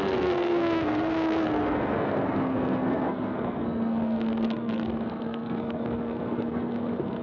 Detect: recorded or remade remade